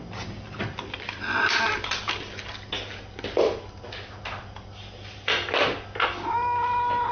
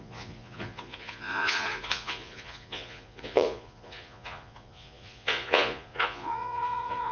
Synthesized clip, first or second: second